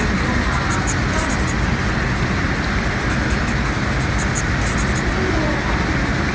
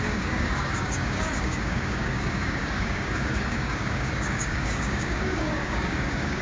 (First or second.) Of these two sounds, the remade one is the second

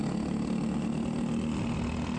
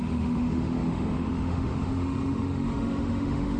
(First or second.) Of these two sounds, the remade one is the second